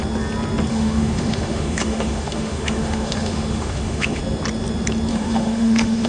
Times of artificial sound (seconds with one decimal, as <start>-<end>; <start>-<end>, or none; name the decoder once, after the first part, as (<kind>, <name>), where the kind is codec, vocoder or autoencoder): 0.7-4.2 (autoencoder, DAC-VAE); 5.1-6.1